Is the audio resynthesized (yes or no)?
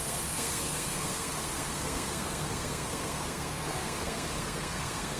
yes